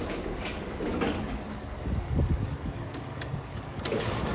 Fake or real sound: fake